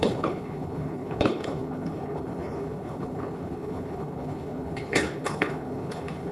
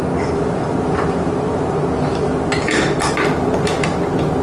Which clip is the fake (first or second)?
first